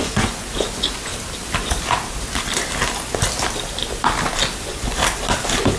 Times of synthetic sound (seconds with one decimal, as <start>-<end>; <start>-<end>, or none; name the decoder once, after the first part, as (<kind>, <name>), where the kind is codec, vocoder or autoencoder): 0.0-1.1 (vocoder, Vocos); 4.6-5.0

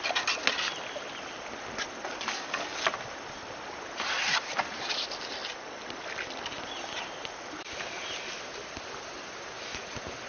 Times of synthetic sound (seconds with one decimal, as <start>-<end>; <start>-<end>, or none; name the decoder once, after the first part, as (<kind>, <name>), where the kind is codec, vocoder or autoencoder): none

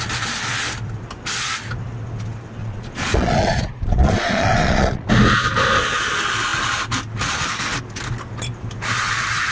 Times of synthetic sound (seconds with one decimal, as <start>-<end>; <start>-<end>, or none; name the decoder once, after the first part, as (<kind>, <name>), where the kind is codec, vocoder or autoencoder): 2.6-5.1 (vocoder, Vocos)

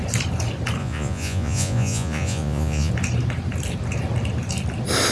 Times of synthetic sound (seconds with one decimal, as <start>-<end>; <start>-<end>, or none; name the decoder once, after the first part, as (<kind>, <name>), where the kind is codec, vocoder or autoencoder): 0.8-2.9 (vocoder, Vocos)